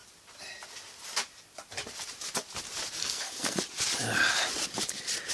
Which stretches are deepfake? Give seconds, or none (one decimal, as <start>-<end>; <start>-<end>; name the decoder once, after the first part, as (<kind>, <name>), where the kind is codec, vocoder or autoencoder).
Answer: 3.0-3.6 (codec, SNAC)